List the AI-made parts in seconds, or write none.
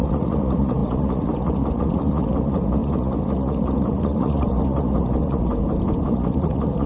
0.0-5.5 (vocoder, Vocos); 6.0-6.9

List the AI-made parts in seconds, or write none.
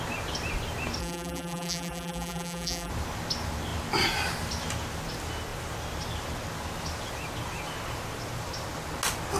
1.0-2.9 (vocoder, BigVGAN v2)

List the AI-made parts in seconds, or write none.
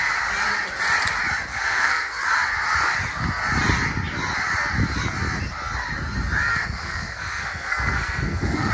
1.5-2.2 (codec, SNAC); 6.5-8.7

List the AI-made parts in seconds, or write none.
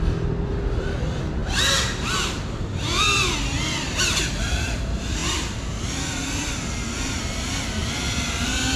0.0-8.8 (vocoder, BigVGAN v2)